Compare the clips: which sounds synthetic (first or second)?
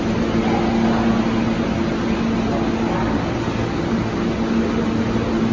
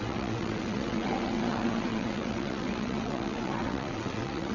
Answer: second